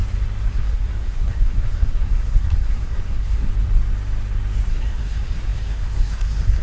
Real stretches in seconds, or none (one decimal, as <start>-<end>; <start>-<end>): 0.0-0.5; 3.5-4.7